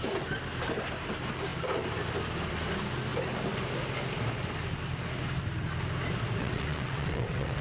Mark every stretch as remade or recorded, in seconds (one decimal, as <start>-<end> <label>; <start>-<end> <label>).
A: 0.0-6.4 recorded; 6.4-7.6 remade